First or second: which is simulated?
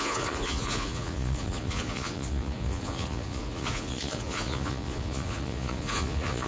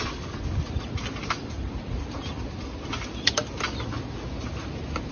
first